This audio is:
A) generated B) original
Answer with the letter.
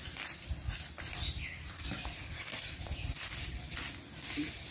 B